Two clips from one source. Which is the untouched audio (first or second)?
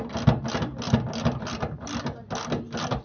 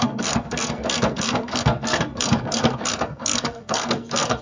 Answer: first